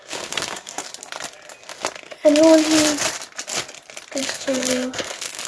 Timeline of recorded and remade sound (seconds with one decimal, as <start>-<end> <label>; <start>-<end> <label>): 0.0-0.9 remade; 0.9-4.2 recorded; 4.2-5.5 remade

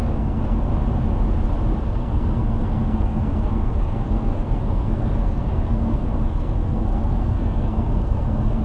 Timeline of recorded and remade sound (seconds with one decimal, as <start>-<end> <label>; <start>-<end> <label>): 0.0-0.7 remade; 0.7-1.8 recorded; 1.8-8.6 remade

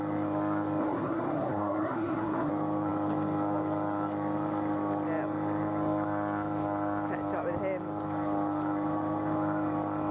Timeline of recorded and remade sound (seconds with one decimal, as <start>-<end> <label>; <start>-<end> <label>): 0.0-0.8 recorded; 0.8-2.5 remade; 2.5-10.1 recorded

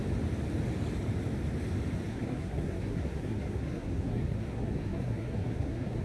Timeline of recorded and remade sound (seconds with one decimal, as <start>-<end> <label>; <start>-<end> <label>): 0.0-2.1 recorded; 2.1-6.0 remade